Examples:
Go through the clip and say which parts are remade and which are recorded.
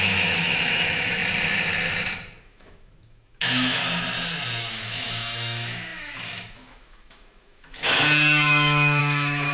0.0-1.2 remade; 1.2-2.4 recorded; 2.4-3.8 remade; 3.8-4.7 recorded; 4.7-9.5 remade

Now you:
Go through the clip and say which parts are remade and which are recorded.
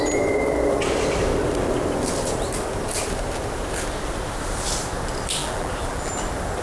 0.0-5.4 recorded; 5.4-6.1 remade; 6.1-6.6 recorded